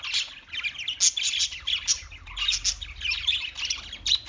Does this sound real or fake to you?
real